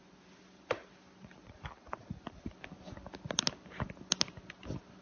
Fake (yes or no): no